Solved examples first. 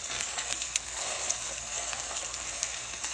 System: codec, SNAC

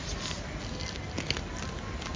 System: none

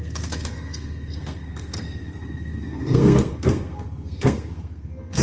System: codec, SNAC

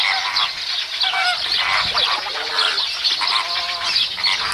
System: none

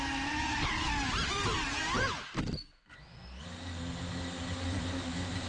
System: none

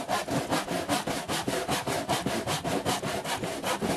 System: none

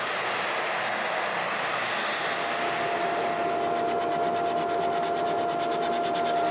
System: none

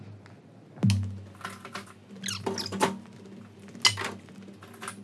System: none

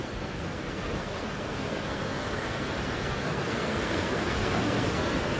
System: codec, SNAC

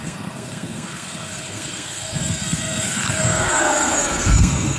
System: codec, SNAC